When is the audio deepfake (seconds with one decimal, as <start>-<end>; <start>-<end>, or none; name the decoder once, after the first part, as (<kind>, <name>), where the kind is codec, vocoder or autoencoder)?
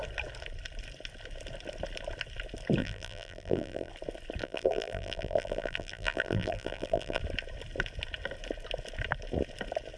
2.8-3.9 (vocoder, BigVGAN v2); 4.4-7.2